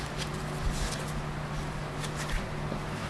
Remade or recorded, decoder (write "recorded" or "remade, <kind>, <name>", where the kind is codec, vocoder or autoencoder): recorded